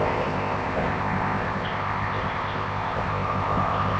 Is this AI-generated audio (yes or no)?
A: yes